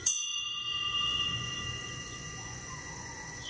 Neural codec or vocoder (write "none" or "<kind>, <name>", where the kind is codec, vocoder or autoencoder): vocoder, Vocos